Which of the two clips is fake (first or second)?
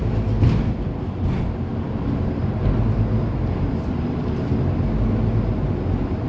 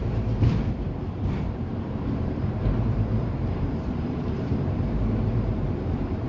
second